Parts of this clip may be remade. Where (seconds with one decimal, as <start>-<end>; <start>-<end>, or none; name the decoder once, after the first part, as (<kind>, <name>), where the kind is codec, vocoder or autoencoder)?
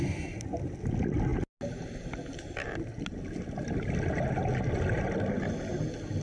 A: none